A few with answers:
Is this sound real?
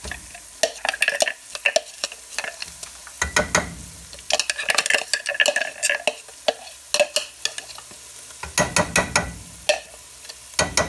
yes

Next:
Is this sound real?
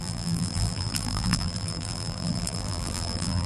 no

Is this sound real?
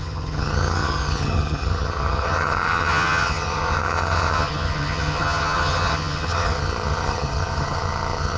no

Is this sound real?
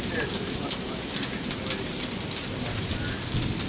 yes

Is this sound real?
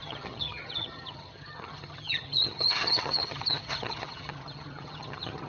no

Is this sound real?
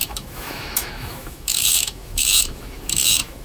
no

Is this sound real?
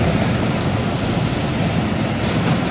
yes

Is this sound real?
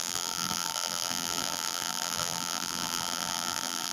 no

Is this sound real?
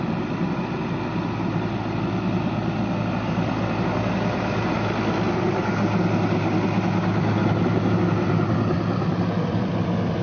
yes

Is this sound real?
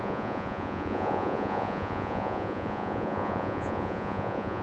no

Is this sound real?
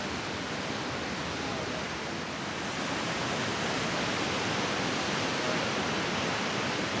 yes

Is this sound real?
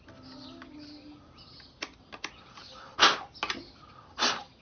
yes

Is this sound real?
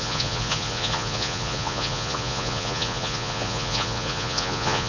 no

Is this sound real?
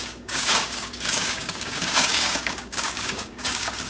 no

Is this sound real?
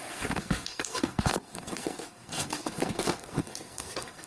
no